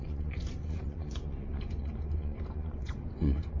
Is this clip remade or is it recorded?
remade